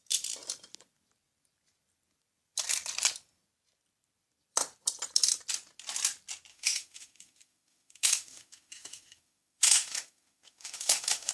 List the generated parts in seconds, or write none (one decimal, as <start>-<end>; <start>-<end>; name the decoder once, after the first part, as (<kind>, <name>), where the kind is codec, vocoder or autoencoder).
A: 6.5-11.3 (autoencoder, DAC-VAE)